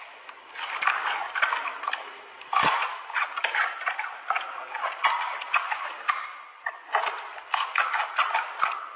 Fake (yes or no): no